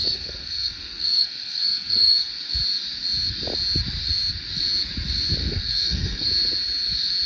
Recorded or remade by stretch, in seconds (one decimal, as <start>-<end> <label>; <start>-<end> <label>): 0.0-2.4 remade; 2.4-5.4 recorded; 5.4-6.3 remade; 6.3-7.3 recorded